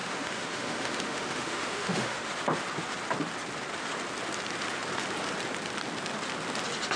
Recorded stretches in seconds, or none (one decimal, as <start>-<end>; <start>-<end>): 2.3-7.0